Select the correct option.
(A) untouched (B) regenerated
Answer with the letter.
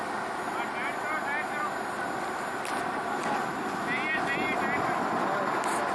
A